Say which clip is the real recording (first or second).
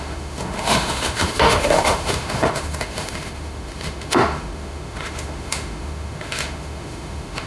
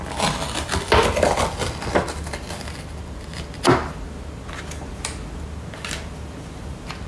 second